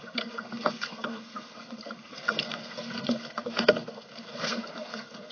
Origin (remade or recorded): remade